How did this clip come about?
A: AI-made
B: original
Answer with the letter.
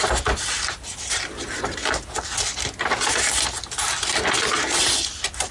B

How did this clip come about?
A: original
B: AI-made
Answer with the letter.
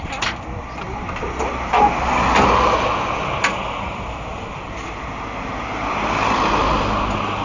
A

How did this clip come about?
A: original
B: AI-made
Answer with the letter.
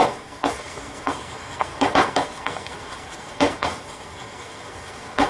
B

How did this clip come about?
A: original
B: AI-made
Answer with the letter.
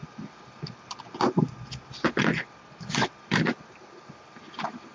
A